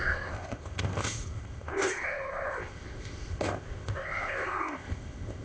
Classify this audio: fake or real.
fake